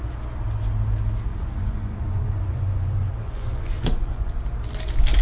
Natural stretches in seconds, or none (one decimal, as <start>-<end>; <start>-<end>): 0.0-1.3; 4.4-5.2

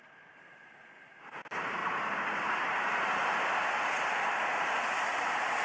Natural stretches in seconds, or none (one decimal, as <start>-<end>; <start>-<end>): 0.0-1.8